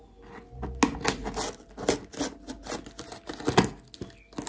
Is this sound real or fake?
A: real